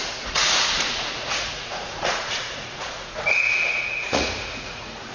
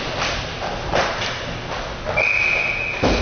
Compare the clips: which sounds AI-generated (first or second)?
first